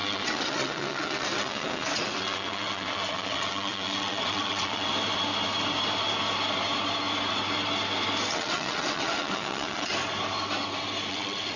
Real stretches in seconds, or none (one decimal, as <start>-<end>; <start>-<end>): 4.9-8.3; 9.9-11.1

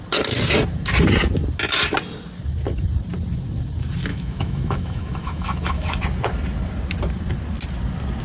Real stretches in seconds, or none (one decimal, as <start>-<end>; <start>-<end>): 0.0-4.1; 6.0-8.2

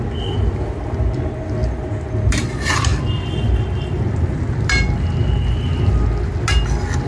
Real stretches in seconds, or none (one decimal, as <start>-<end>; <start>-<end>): 0.0-7.1

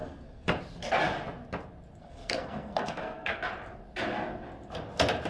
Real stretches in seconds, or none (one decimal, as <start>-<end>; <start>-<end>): 0.6-2.0; 3.4-5.3